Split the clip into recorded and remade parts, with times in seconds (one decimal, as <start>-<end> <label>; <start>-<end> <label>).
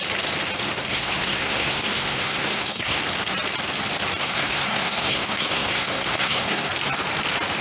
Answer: 0.0-0.9 recorded; 0.9-3.0 remade; 3.0-4.2 recorded; 4.2-6.7 remade; 6.7-7.6 recorded